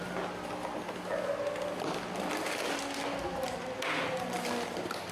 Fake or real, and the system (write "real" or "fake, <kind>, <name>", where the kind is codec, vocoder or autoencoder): real